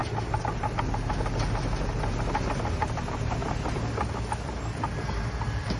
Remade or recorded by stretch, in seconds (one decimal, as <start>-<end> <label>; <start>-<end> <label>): 0.0-5.8 recorded